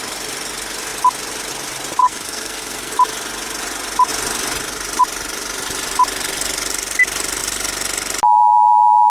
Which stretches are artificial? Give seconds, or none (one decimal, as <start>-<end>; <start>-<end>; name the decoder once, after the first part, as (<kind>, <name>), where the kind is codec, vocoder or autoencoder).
2.0-2.9 (codec, SNAC)